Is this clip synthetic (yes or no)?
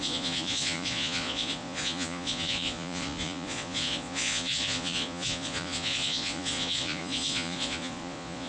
yes